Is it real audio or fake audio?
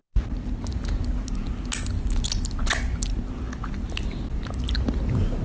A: real